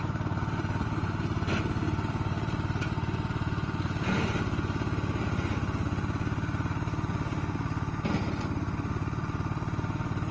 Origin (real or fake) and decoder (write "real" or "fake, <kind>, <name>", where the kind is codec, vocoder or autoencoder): real